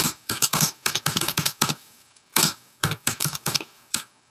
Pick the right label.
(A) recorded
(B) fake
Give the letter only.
B